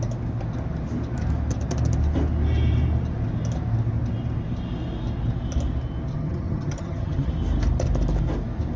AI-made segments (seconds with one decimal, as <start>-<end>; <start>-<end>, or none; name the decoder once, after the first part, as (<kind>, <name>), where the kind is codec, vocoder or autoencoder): 6.1-7.3 (vocoder, HiFi-GAN)